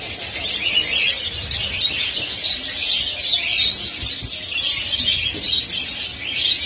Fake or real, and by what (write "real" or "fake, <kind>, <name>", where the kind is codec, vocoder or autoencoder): real